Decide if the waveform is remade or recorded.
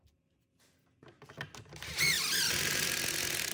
recorded